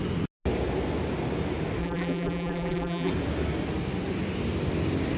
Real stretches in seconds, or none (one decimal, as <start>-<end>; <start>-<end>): 0.0-1.8; 3.1-5.2